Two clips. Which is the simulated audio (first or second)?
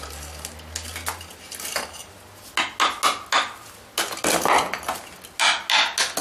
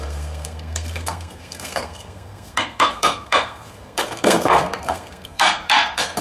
second